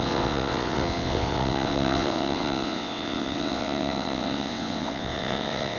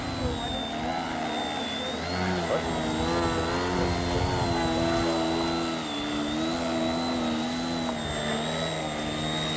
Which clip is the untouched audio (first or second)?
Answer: second